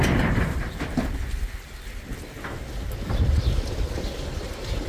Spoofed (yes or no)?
yes